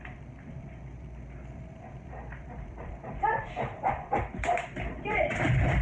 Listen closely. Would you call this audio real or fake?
fake